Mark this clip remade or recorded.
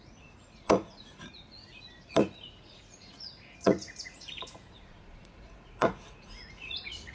remade